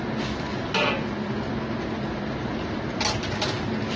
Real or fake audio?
real